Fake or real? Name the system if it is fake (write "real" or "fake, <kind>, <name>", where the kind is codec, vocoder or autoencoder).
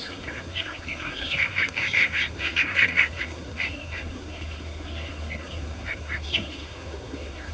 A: fake, codec, SNAC